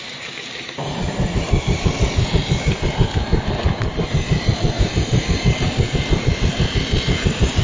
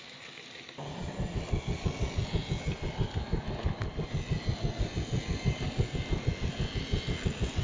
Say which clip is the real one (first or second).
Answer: second